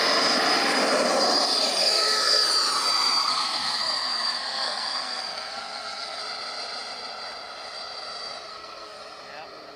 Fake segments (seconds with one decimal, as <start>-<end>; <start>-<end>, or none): 1.8-2.5; 3.2-6.2; 8.5-9.0